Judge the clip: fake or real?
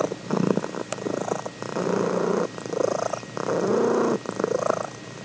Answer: real